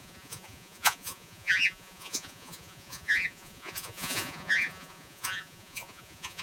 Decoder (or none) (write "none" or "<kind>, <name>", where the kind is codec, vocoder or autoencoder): vocoder, Vocos